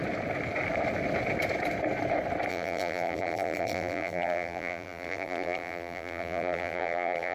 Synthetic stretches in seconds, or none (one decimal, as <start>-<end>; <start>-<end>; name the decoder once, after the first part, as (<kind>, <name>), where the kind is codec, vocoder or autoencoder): 2.5-7.3 (vocoder, BigVGAN v2)